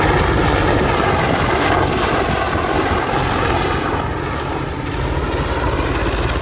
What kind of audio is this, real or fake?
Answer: real